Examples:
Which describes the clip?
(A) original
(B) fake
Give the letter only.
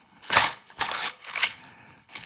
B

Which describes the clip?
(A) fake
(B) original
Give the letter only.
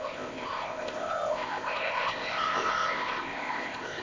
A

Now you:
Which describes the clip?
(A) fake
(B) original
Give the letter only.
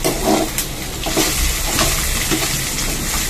B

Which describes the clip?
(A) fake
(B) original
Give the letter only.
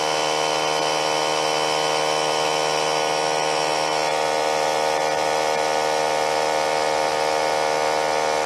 B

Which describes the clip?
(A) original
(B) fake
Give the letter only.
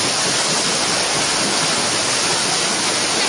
A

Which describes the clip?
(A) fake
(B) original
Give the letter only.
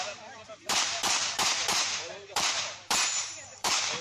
A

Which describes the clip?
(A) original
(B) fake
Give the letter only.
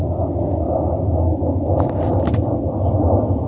A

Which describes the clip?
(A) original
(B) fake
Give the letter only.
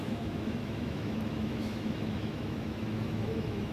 B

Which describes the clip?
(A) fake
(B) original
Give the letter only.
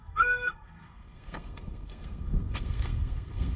A